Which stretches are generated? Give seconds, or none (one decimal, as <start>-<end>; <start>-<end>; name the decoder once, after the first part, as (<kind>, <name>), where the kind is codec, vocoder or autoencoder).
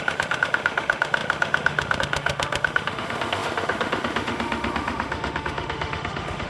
0.0-6.5 (autoencoder, DAC-VAE)